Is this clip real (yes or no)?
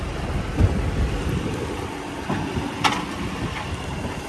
yes